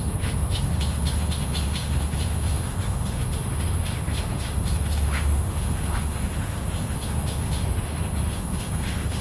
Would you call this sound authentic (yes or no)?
no